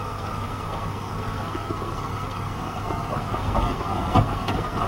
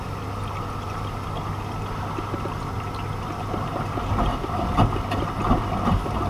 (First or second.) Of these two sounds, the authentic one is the second